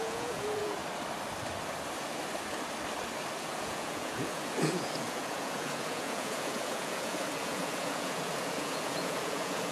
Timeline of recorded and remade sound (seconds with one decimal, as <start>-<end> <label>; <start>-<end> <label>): 0.0-0.8 remade; 0.8-3.4 recorded; 3.4-9.7 remade